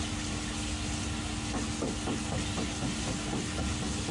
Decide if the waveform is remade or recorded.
recorded